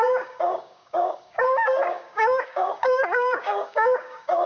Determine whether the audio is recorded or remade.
remade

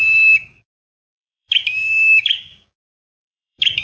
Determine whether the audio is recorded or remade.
remade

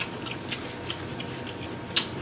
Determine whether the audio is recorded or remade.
recorded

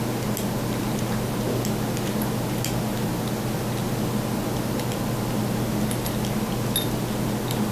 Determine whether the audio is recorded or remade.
recorded